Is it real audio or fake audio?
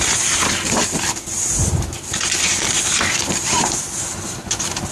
real